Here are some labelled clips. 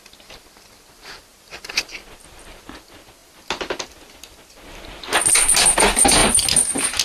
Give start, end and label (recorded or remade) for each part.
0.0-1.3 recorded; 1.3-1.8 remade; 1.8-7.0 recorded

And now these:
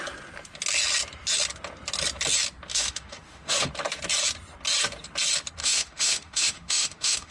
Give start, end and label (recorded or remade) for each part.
0.0-2.7 recorded; 2.7-3.7 remade; 3.7-5.6 recorded; 5.6-7.3 remade

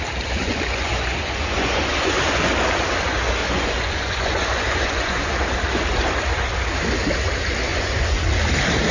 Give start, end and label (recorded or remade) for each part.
0.0-0.4 recorded; 0.4-2.4 remade; 2.4-3.4 recorded; 3.4-5.4 remade; 5.4-7.7 recorded; 7.7-8.2 remade; 8.2-8.9 recorded

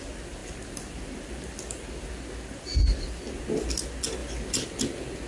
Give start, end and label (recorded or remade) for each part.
0.0-5.3 recorded